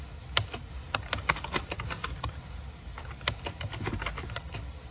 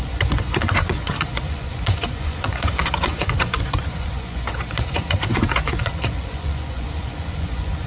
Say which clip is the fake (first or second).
second